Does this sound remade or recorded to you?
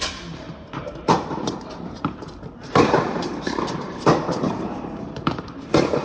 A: remade